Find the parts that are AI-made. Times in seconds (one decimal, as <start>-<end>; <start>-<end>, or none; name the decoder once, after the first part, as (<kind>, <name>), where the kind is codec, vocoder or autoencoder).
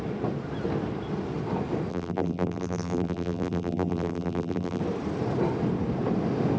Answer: 1.9-4.8 (vocoder, BigVGAN v2)